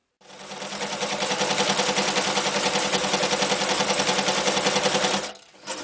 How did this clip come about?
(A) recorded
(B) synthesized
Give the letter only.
A